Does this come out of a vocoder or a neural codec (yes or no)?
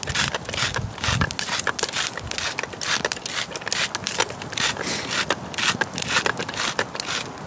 no